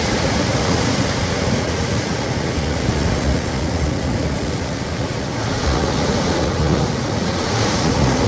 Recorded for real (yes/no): no